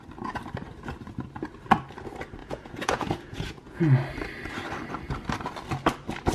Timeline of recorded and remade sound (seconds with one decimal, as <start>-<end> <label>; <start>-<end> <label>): 0.0-2.4 recorded; 2.4-3.8 remade; 3.8-6.3 recorded